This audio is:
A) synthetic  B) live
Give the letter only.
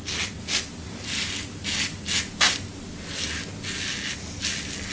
B